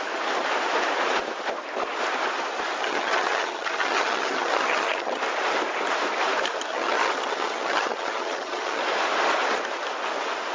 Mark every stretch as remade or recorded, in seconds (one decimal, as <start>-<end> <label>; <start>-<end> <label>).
0.0-2.8 recorded; 2.8-5.2 remade; 5.2-6.7 recorded; 6.7-8.8 remade; 8.8-10.5 recorded